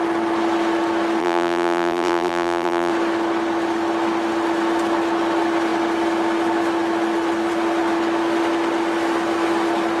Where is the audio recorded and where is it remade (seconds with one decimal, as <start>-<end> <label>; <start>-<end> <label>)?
0.0-1.2 recorded; 1.2-2.9 remade; 2.9-10.0 recorded